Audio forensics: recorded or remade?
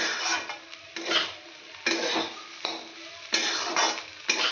recorded